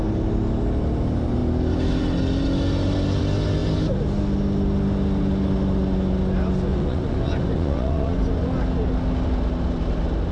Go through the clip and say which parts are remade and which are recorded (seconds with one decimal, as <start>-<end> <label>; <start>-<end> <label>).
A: 0.0-6.7 recorded; 6.7-8.4 remade; 8.4-10.3 recorded